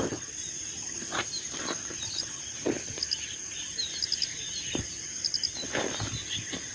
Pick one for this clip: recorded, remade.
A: recorded